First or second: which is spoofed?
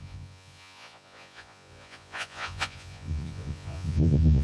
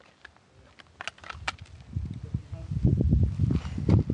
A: first